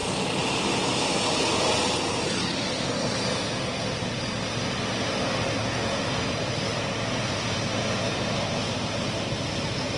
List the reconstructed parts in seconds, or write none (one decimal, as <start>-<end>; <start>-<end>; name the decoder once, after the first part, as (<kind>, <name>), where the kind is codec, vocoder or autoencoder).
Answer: 5.6-6.1 (vocoder, Vocos)